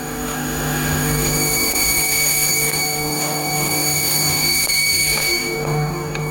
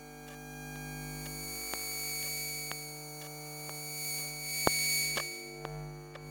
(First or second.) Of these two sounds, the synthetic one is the first